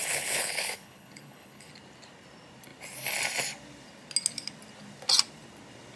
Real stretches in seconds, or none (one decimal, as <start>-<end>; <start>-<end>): 1.7-6.0